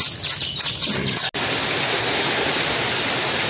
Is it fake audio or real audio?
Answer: real